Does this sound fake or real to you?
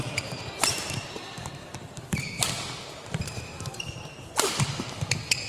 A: fake